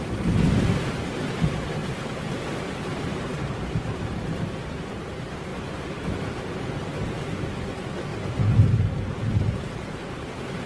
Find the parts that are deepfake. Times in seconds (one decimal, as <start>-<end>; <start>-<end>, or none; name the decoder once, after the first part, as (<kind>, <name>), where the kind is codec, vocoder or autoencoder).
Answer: 0.0-1.8 (vocoder, BigVGAN v2); 2.5-2.9; 3.6-10.7